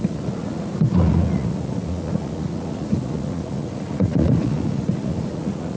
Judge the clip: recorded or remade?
remade